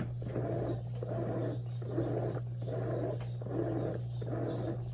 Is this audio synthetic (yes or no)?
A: no